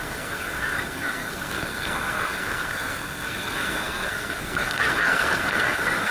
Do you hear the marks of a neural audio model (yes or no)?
yes